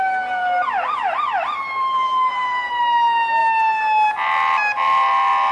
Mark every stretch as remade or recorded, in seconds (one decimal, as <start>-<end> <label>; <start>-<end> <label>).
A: 0.0-0.4 recorded; 0.4-2.8 remade; 2.8-5.5 recorded